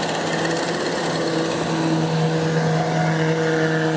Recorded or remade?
recorded